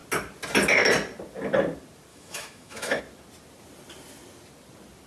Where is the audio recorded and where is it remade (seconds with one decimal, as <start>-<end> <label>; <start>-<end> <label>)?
0.0-2.1 recorded; 2.1-3.0 remade; 3.0-5.1 recorded